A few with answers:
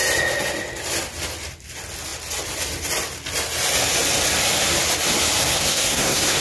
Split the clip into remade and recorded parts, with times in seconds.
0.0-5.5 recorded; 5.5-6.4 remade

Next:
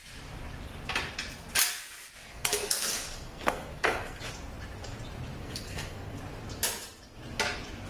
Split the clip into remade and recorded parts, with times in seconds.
0.0-2.2 recorded; 2.2-4.2 remade; 4.2-5.4 recorded; 5.4-6.2 remade; 6.2-7.9 recorded